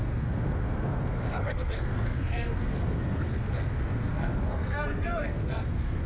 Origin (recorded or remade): remade